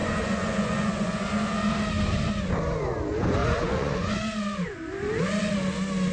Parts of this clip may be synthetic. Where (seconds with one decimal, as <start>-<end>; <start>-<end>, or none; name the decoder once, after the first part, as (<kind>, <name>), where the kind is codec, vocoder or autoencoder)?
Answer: 0.0-1.7 (vocoder, Vocos); 3.4-4.1